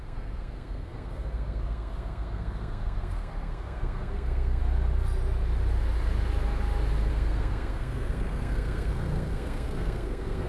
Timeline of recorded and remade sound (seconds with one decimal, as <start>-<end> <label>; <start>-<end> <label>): 0.0-4.6 remade; 4.6-7.1 recorded; 7.1-10.5 remade